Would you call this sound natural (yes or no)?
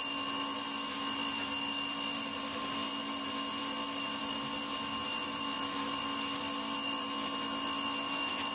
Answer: yes